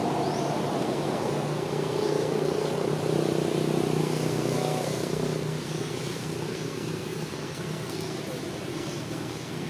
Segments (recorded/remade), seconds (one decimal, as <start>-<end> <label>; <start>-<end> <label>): 0.0-0.8 recorded; 0.8-2.9 remade; 2.9-4.0 recorded; 4.0-8.2 remade; 8.2-8.7 recorded; 8.7-9.7 remade